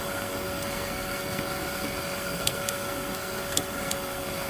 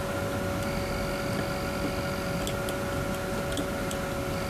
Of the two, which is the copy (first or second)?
first